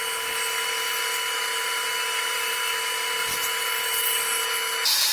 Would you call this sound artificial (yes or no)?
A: no